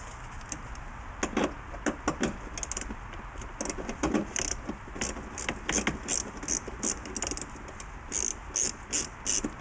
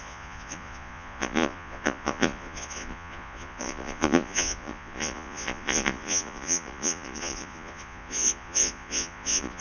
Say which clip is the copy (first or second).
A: second